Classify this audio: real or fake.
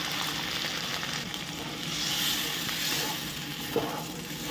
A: real